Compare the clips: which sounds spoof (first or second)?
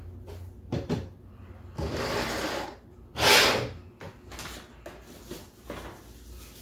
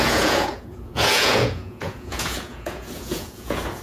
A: second